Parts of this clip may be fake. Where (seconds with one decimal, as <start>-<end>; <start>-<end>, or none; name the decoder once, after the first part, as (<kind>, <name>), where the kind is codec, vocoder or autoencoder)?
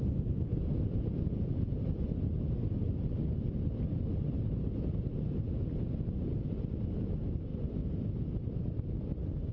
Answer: none